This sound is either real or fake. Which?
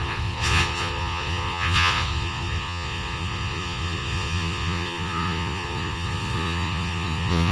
fake